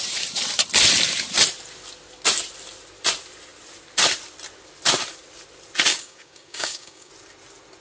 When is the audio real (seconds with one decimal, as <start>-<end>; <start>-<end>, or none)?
0.0-5.9; 7.1-7.8